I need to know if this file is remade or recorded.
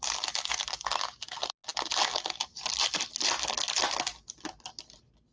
recorded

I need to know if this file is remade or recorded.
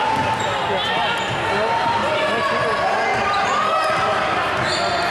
recorded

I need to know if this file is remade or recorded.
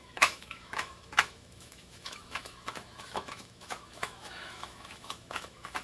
remade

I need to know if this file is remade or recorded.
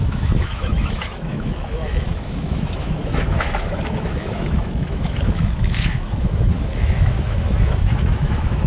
remade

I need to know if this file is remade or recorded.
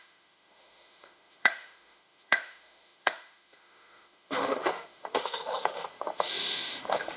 remade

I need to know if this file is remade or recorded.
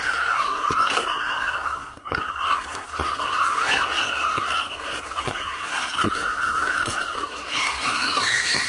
remade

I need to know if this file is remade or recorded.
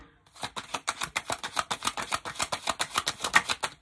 recorded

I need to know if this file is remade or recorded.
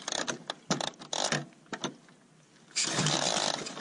recorded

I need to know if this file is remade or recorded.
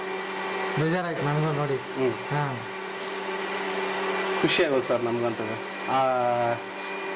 recorded